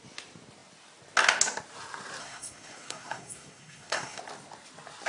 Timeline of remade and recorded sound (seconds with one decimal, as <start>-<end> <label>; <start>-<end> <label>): 0.0-2.2 recorded; 2.2-4.2 remade; 4.2-5.1 recorded